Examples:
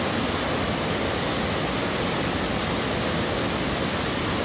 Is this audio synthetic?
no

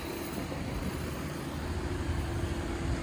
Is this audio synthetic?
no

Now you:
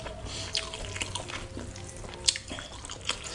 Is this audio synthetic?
no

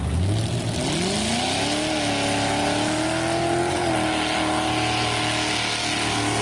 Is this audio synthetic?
no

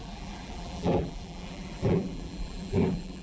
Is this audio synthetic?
yes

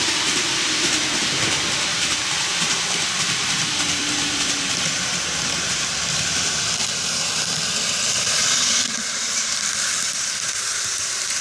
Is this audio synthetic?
yes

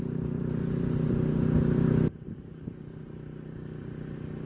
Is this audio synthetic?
yes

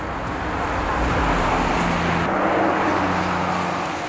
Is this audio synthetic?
no